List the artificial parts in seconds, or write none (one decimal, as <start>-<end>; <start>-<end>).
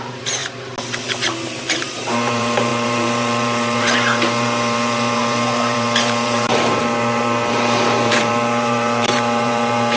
0.0-0.4; 1.6-10.0